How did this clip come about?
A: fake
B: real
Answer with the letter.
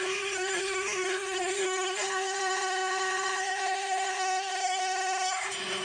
A